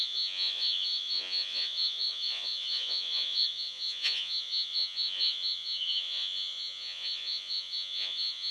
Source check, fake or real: fake